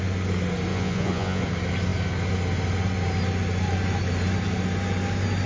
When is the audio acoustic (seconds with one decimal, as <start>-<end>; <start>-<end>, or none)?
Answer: 0.0-0.7; 1.4-5.5